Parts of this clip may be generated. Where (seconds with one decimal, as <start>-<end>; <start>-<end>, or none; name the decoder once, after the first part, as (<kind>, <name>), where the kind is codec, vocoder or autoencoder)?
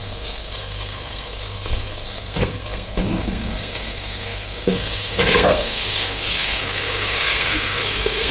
0.0-8.3 (codec, SNAC)